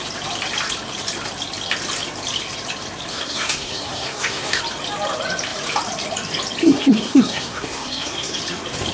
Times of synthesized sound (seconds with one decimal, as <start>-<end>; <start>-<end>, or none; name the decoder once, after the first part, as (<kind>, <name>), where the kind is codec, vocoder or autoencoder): 3.1-4.6 (codec, SNAC); 6.6-8.4